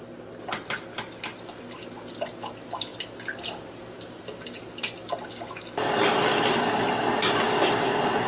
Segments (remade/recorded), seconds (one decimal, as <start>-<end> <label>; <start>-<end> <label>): 0.0-8.3 recorded